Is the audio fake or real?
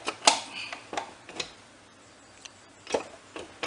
real